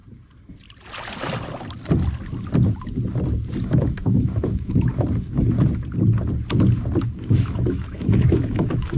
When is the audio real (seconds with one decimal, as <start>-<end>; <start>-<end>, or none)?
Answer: 0.0-3.6; 4.9-7.0